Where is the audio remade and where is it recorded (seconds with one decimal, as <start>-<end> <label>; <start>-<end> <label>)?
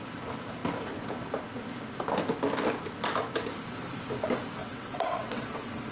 0.0-4.6 recorded; 4.6-5.9 remade